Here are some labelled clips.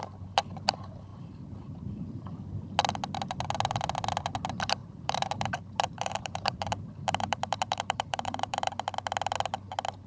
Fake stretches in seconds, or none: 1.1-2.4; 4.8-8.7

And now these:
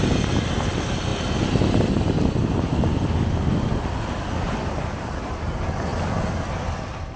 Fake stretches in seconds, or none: none

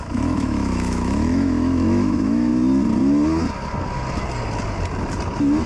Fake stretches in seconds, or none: 0.0-2.5

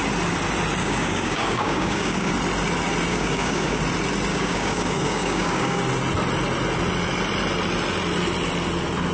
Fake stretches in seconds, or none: 0.8-2.3; 3.1-3.8; 4.3-5.8

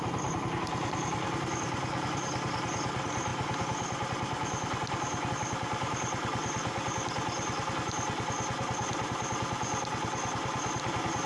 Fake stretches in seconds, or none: none

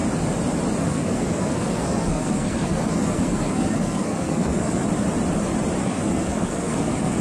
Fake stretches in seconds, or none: 0.8-4.8; 5.8-7.2

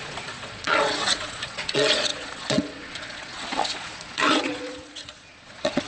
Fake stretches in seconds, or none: 0.0-5.9

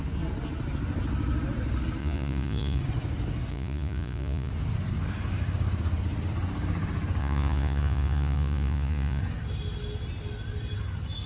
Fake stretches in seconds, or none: 2.0-2.8; 3.5-4.5; 7.2-9.2